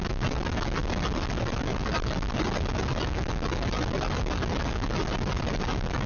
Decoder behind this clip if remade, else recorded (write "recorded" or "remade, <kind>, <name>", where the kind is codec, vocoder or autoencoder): recorded